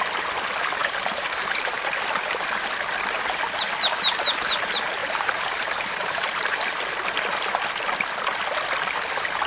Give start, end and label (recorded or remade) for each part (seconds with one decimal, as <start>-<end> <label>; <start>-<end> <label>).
0.0-0.8 recorded; 0.8-1.8 remade; 1.8-5.0 recorded; 5.0-6.7 remade; 6.7-9.5 recorded